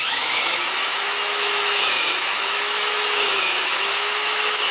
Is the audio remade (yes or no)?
yes